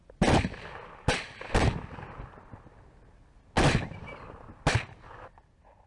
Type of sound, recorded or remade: recorded